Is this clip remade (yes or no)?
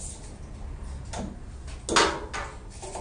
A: no